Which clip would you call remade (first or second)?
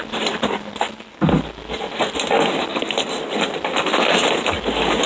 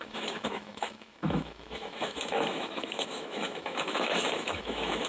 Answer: second